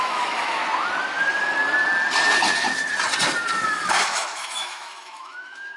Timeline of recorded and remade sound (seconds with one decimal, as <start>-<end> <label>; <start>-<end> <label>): 0.0-0.6 remade; 0.6-3.9 recorded; 3.9-5.8 remade